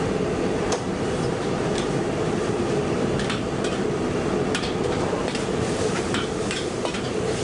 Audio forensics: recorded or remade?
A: remade